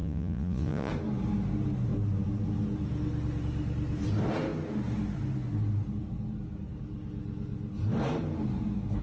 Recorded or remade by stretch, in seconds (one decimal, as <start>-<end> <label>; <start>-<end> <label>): 0.0-0.9 remade; 0.9-9.0 recorded